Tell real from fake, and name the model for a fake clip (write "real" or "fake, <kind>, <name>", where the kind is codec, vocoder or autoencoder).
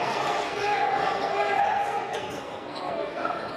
fake, codec, SNAC